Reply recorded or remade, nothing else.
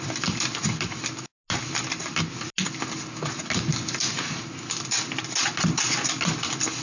recorded